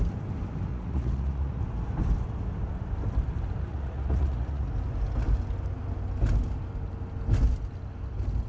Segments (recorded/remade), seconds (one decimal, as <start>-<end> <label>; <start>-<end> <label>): 0.0-0.7 recorded; 0.7-1.6 remade; 1.6-3.7 recorded; 3.7-4.7 remade; 4.7-8.5 recorded

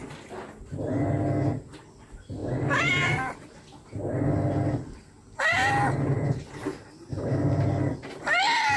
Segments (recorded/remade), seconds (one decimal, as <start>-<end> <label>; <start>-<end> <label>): 0.0-8.8 recorded

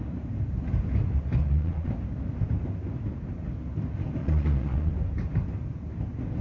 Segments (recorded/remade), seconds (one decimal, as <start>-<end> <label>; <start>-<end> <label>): 0.0-1.4 recorded; 1.4-1.9 remade; 1.9-4.2 recorded; 4.2-4.9 remade; 4.9-6.4 recorded

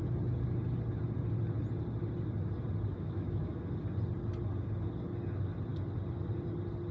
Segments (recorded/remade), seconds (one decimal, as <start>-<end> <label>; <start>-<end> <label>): 0.0-2.9 recorded; 2.9-3.6 remade; 3.6-6.9 recorded

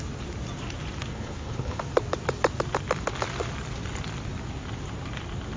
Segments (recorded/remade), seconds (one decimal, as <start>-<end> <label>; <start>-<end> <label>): 0.0-1.1 recorded; 1.1-1.8 remade; 1.8-5.6 recorded

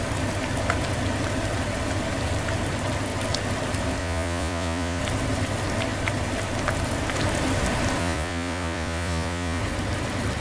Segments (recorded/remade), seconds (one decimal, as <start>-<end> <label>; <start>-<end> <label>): 0.0-4.0 recorded; 4.0-5.0 remade; 5.0-8.0 recorded; 8.0-9.6 remade; 9.6-10.4 recorded